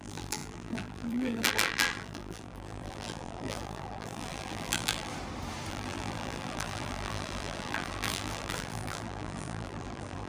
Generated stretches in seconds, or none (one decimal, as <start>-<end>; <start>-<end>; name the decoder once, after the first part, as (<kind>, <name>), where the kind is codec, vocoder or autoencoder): 0.0-5.1 (vocoder, BigVGAN v2); 5.7-10.3